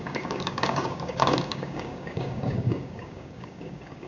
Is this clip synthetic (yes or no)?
yes